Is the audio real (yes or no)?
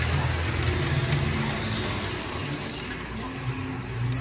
yes